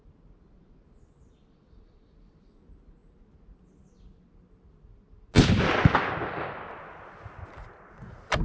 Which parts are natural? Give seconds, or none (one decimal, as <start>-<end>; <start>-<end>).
0.0-8.4